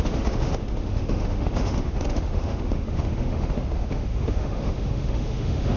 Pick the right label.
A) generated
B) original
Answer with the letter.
A